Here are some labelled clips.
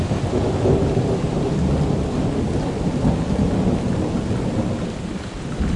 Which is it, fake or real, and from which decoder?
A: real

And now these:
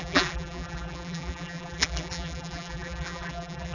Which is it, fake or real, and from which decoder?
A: fake, vocoder, BigVGAN v2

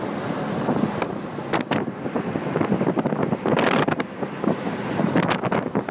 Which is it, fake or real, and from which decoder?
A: real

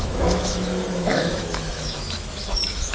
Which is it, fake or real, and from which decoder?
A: fake, autoencoder, DAC-VAE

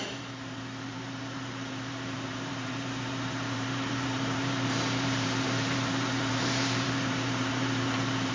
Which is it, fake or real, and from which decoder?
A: fake, vocoder, BigVGAN v2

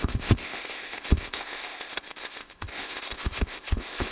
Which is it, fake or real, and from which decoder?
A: fake, codec, ZipCodec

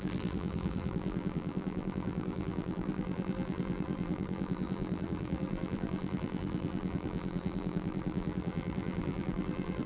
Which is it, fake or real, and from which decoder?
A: fake, vocoder, BigVGAN v2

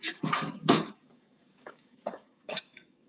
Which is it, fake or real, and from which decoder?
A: fake, codec, DAC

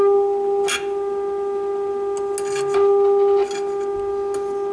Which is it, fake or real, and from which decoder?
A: real